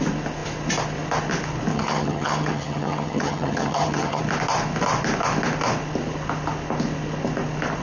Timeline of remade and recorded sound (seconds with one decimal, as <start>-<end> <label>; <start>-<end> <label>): 0.0-1.7 recorded; 1.7-4.2 remade; 4.2-7.8 recorded